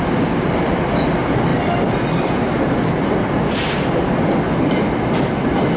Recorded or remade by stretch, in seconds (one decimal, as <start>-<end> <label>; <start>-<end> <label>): 0.0-5.8 recorded